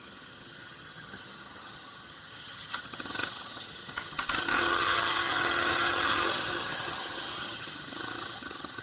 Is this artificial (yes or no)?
yes